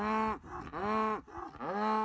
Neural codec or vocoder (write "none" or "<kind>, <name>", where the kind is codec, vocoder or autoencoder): none